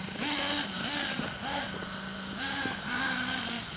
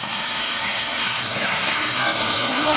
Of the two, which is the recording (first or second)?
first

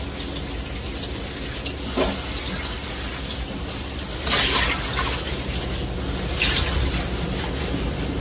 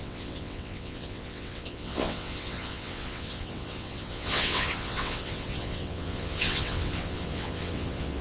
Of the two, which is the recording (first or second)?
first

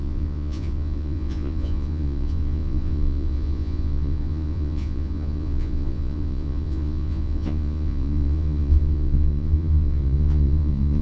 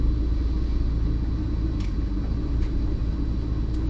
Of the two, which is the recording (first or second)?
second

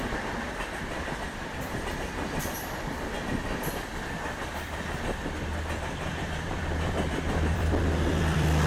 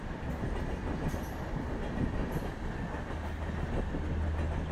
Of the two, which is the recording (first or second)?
second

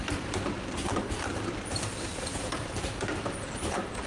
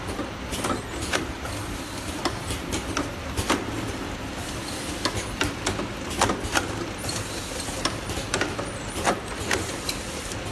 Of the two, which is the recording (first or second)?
second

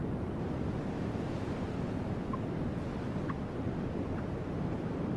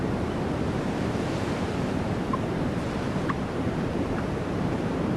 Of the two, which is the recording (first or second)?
first